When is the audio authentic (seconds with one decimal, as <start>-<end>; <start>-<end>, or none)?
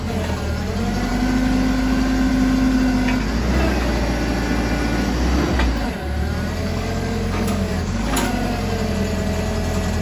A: 0.0-6.6; 8.3-10.0